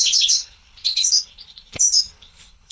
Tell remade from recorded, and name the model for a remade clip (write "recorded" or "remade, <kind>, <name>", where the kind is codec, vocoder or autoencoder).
remade, codec, HILCodec